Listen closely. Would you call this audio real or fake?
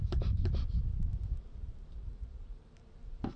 fake